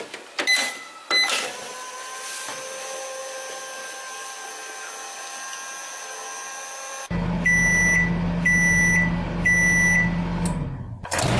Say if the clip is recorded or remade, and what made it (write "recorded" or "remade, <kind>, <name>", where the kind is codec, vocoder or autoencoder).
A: recorded